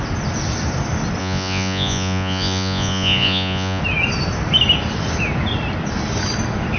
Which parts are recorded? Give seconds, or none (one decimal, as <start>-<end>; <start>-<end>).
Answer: 0.0-1.2; 3.8-6.8